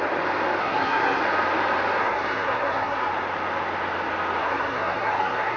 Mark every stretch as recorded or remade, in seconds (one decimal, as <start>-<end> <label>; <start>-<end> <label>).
0.0-0.6 recorded; 0.6-1.2 remade; 1.2-2.0 recorded; 2.0-3.1 remade; 3.1-4.4 recorded; 4.4-5.6 remade